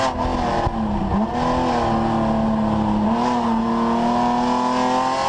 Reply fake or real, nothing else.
real